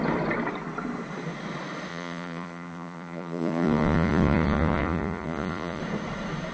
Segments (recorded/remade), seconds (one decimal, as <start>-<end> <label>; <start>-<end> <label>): 0.0-1.9 recorded; 1.9-5.8 remade; 5.8-6.5 recorded